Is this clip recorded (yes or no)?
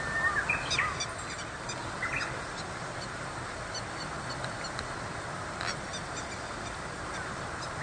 yes